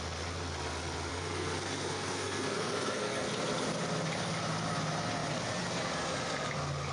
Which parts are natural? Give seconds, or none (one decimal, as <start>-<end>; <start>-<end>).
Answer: 0.0-1.1; 3.3-6.9